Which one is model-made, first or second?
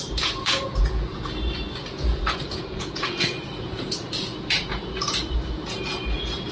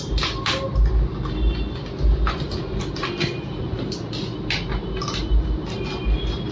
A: first